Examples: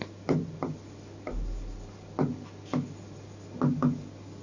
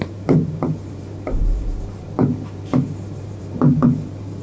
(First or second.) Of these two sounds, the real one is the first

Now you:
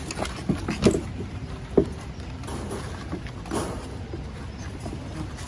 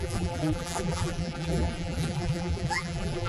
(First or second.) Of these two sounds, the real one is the first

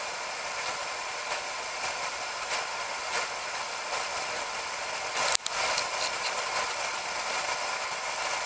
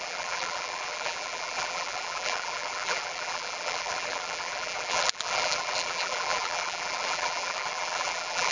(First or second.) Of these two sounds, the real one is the first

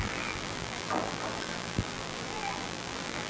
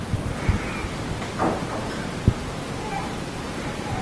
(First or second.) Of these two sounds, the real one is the second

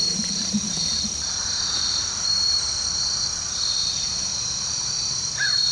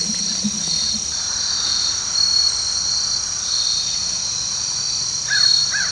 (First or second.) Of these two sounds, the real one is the second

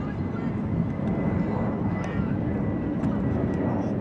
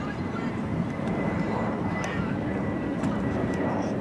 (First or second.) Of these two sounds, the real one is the first